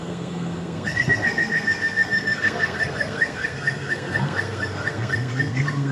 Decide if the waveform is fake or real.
fake